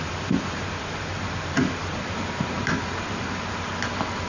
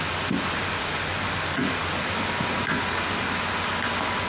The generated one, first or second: first